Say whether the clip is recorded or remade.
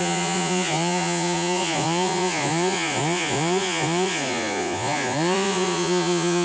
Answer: remade